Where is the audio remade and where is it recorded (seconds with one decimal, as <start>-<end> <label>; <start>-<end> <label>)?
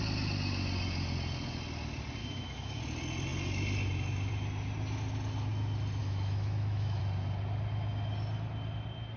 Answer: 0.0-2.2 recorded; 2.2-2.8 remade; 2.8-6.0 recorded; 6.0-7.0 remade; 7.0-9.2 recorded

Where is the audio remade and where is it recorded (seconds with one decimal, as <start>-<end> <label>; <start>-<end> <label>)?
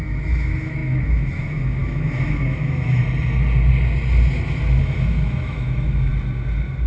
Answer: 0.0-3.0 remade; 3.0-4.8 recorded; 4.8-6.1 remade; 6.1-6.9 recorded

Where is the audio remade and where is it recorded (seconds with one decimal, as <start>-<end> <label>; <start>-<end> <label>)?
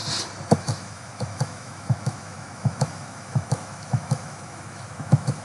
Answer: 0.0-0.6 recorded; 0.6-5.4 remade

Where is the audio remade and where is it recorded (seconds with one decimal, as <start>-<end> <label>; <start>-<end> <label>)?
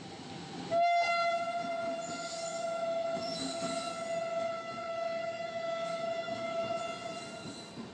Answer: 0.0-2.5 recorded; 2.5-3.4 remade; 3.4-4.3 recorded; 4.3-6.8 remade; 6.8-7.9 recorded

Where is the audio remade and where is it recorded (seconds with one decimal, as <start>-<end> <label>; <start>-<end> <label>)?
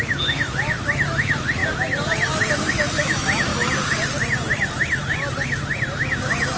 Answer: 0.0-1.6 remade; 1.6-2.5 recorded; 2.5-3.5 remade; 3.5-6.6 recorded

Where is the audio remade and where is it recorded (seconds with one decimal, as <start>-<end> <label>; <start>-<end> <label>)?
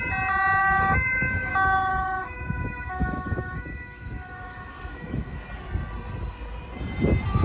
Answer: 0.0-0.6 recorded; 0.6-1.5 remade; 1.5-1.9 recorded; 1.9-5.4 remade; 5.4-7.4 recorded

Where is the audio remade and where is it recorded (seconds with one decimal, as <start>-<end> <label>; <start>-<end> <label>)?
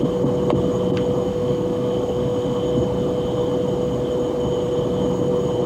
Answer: 0.0-1.3 recorded; 1.3-2.6 remade; 2.6-5.7 recorded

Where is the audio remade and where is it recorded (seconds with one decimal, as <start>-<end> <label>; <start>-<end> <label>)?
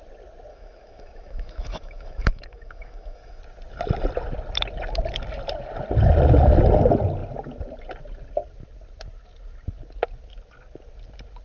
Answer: 0.0-0.5 recorded; 0.5-3.4 remade; 3.4-11.4 recorded